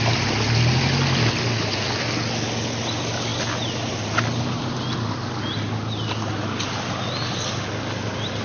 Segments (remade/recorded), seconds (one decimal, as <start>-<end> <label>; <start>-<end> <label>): 0.0-8.4 recorded

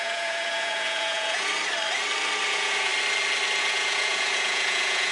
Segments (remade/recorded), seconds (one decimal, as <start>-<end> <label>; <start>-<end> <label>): 0.0-1.5 remade; 1.5-2.5 recorded; 2.5-2.9 remade; 2.9-3.6 recorded; 3.6-5.1 remade

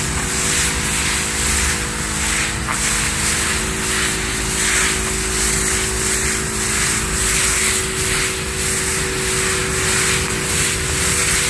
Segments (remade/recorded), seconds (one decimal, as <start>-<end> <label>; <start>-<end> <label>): 0.0-11.5 recorded